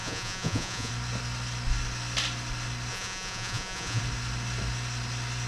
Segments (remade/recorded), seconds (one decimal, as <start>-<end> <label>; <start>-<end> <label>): 0.0-0.9 remade; 0.9-2.9 recorded; 2.9-4.0 remade; 4.0-5.5 recorded